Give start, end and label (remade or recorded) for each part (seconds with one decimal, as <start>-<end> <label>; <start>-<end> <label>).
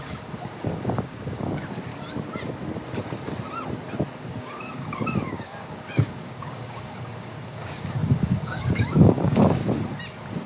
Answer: 0.0-1.9 remade; 1.9-4.1 recorded; 4.1-9.6 remade; 9.6-10.5 recorded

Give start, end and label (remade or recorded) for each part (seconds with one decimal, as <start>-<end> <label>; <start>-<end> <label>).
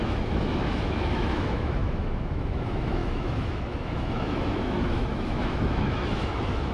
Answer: 0.0-6.7 remade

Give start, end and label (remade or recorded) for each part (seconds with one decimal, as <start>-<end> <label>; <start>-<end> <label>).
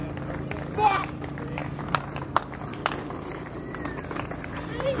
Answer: 0.0-0.7 recorded; 0.7-5.0 remade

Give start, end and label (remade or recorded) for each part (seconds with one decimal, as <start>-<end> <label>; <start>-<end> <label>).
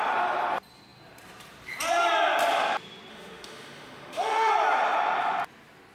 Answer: 0.0-3.1 recorded; 3.1-4.5 remade; 4.5-5.9 recorded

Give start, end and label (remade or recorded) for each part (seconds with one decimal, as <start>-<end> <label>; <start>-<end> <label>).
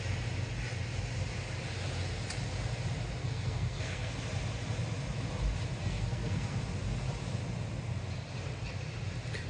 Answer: 0.0-3.2 recorded; 3.2-4.1 remade; 4.1-5.8 recorded; 5.8-6.6 remade; 6.6-9.5 recorded